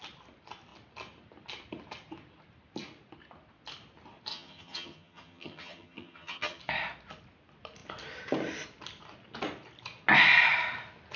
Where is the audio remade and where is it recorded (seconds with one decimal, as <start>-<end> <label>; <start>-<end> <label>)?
0.0-4.3 recorded; 4.3-6.6 remade; 6.6-11.2 recorded